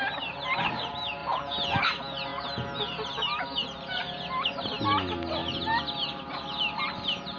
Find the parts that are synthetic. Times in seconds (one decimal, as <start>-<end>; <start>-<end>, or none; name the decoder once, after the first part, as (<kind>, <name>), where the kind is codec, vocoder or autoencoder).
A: 1.2-1.8 (vocoder, Vocos)